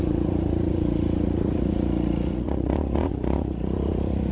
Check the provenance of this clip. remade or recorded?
remade